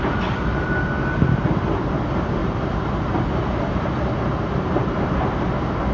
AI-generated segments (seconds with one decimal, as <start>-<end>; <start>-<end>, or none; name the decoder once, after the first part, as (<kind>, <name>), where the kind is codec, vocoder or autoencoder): 2.4-5.4 (vocoder, BigVGAN v2)